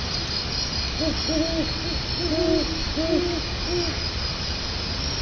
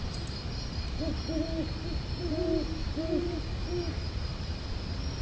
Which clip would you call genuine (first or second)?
first